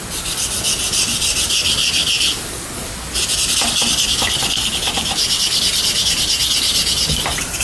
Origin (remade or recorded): recorded